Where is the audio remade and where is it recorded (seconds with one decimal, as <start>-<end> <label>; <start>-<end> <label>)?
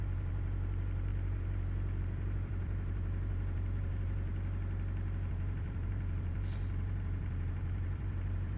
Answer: 0.0-4.3 remade; 4.3-5.3 recorded; 5.3-8.6 remade